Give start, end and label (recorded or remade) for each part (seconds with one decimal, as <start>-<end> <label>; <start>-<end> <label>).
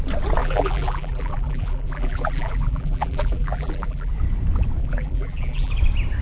0.0-0.4 recorded; 0.4-4.1 remade; 4.1-4.8 recorded; 4.8-5.7 remade; 5.7-6.2 recorded